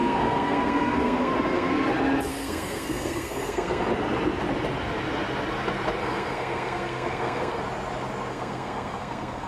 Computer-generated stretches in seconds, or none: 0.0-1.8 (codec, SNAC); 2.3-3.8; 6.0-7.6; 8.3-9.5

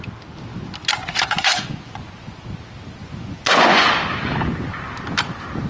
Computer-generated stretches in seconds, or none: 1.0-2.4 (vocoder, Vocos); 3.0-3.9

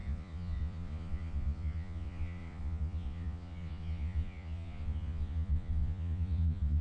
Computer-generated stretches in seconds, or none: 0.0-6.8 (vocoder, Vocos)

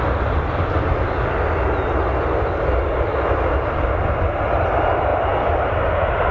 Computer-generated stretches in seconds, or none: none

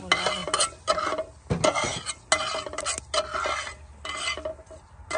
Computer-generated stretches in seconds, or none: none